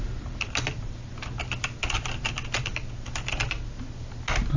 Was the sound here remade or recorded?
recorded